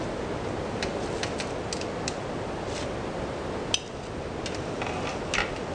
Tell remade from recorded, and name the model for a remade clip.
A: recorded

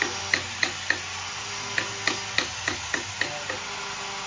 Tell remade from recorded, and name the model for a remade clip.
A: recorded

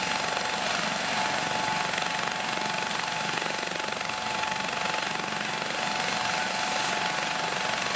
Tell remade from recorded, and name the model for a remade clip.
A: recorded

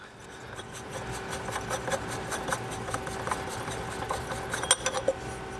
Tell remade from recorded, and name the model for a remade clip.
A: recorded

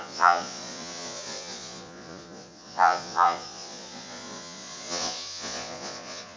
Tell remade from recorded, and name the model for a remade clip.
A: remade, vocoder, Vocos